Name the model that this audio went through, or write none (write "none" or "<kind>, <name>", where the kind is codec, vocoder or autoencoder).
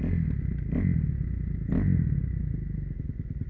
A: none